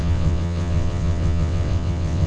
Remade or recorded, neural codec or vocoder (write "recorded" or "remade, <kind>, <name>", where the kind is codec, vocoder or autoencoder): remade, vocoder, WaveNeXt